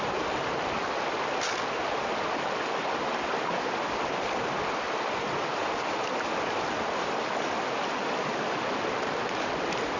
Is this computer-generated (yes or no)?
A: no